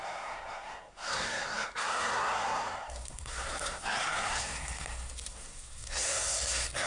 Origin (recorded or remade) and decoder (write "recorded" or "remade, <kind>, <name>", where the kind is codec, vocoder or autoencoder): remade, codec, SNAC